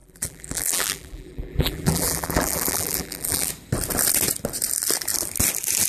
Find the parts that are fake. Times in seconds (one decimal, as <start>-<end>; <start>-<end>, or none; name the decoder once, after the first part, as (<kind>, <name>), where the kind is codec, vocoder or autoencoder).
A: 0.0-3.5 (vocoder, BigVGAN v2)